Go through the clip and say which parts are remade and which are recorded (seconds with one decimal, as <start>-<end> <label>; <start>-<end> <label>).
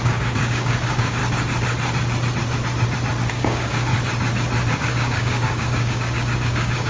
0.0-1.2 remade; 1.2-3.3 recorded; 3.3-3.9 remade; 3.9-4.7 recorded; 4.7-6.9 remade